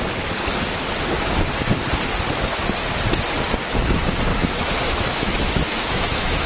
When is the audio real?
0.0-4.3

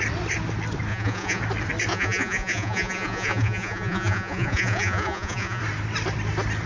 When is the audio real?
0.0-0.9; 1.4-1.9; 5.6-6.7

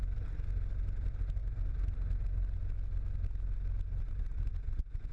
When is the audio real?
0.0-5.1

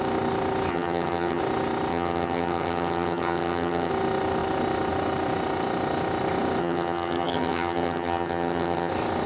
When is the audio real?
0.0-0.7; 1.4-1.9; 3.9-6.6; 8.9-9.3

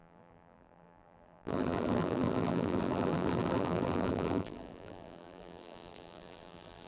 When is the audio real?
none

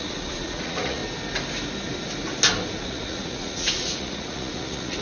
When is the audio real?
1.0-2.8